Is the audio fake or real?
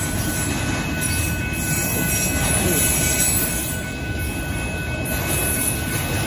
real